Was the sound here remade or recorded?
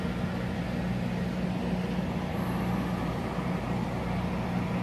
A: recorded